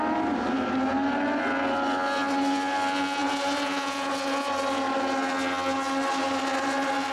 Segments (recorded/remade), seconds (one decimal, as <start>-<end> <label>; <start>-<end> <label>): 0.0-7.1 recorded